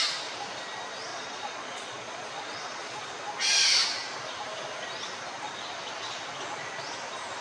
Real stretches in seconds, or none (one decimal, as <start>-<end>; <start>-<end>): 0.0-1.1; 3.1-7.4